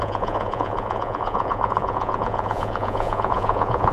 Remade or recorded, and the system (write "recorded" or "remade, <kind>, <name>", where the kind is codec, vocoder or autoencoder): remade, vocoder, Vocos